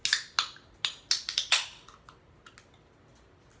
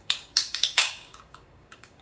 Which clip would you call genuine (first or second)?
first